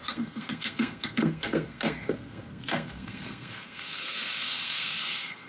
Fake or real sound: fake